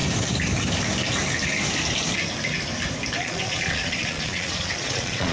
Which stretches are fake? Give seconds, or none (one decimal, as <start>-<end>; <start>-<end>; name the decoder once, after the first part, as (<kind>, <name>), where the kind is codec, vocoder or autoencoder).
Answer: 3.2-5.3 (vocoder, Vocos)